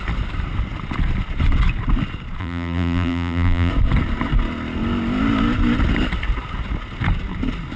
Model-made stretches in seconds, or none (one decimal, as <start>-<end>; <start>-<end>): 2.4-3.7